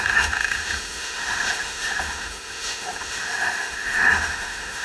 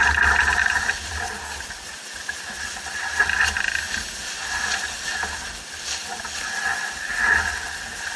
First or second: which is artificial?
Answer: first